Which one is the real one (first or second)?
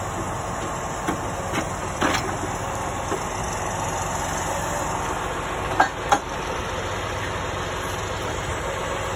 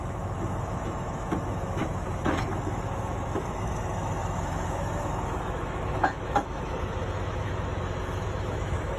first